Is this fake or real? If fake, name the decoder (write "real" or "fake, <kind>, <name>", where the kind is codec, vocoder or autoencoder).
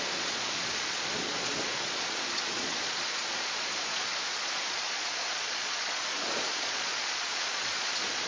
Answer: fake, vocoder, Vocos